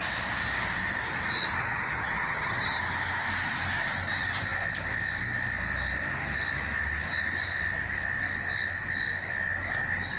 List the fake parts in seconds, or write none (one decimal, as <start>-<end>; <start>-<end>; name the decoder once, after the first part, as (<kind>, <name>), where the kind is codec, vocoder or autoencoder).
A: 1.6-2.8 (vocoder, HiFi-GAN)